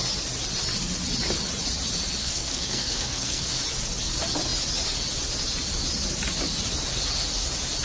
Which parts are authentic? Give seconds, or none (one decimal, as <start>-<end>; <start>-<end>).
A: 0.0-2.2; 3.5-7.8